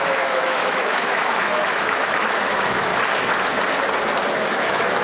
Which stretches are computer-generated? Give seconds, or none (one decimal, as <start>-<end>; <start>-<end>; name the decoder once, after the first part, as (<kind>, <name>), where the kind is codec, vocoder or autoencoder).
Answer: 0.0-2.9 (autoencoder, DAC-VAE); 4.5-5.0